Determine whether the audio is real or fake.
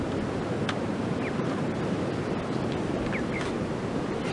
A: real